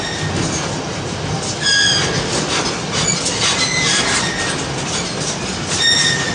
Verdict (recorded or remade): recorded